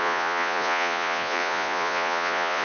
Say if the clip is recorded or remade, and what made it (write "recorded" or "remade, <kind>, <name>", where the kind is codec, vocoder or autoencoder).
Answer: remade, vocoder, Vocos